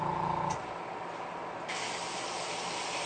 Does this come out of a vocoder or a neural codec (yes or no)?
no